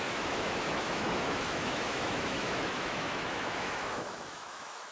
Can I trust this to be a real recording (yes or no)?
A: no